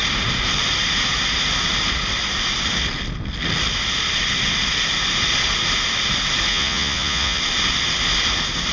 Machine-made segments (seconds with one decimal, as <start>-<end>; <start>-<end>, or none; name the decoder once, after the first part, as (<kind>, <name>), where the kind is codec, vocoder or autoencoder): 6.5-7.4 (vocoder, Vocos)